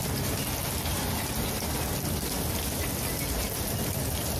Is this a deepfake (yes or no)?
no